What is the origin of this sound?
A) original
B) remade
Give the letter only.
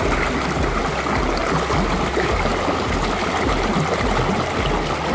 A